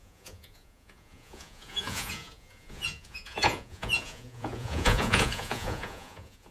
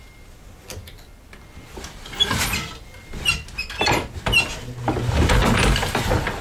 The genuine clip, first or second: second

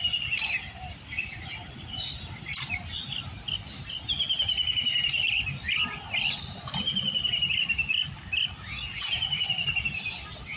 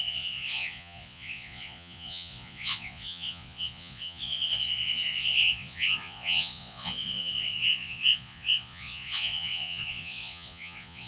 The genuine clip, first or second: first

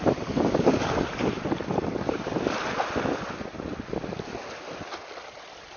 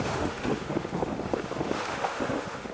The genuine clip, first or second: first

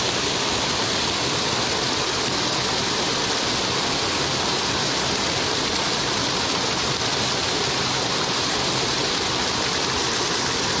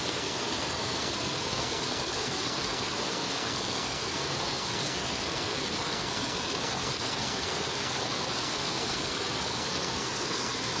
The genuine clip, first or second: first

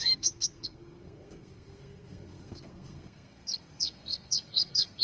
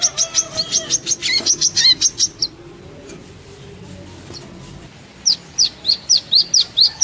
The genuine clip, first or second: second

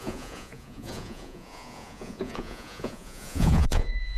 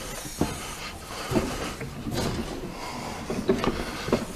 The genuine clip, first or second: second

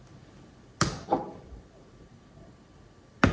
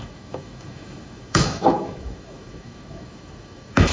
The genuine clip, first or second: first